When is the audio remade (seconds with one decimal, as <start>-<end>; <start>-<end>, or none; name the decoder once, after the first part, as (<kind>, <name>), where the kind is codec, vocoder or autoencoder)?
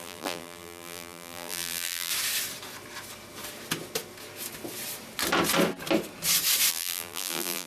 0.0-2.1 (vocoder, BigVGAN v2); 6.7-7.7